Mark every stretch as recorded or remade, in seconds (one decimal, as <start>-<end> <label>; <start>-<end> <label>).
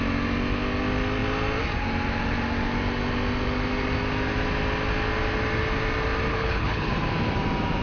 0.0-6.3 recorded; 6.3-6.9 remade; 6.9-7.8 recorded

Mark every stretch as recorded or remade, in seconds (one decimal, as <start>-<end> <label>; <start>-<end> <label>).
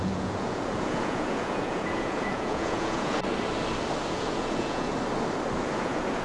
0.0-3.2 remade; 3.2-4.0 recorded; 4.0-4.9 remade; 4.9-5.6 recorded; 5.6-6.2 remade